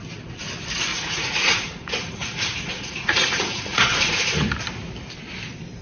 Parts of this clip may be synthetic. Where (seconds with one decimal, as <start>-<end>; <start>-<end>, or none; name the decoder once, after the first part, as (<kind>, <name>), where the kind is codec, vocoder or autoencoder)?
0.9-4.3 (vocoder, Vocos)